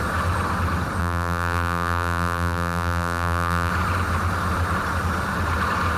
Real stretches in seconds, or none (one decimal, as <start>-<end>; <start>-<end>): 0.0-1.0; 3.7-6.0